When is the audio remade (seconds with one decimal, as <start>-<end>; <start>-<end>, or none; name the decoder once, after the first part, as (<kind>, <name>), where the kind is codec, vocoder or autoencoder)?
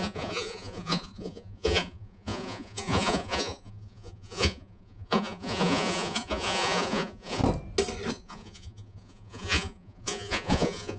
0.0-7.4 (vocoder, Vocos); 8.1-11.0